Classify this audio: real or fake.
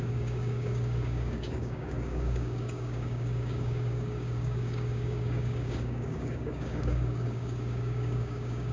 fake